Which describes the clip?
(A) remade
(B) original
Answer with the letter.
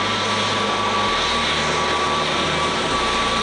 B